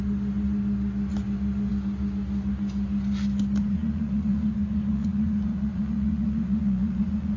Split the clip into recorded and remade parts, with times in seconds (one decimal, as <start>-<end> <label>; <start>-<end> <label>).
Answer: 0.0-3.6 recorded; 3.6-7.4 remade